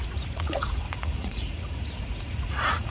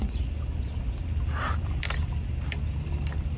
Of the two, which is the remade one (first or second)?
first